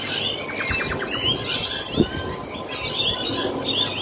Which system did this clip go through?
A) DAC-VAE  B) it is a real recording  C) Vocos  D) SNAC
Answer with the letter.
B